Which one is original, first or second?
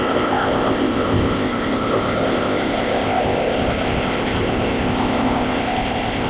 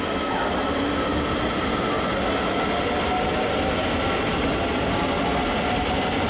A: second